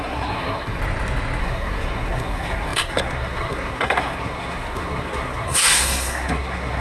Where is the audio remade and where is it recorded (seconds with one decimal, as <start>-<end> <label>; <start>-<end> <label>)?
0.0-0.8 remade; 0.8-1.4 recorded; 1.4-6.8 remade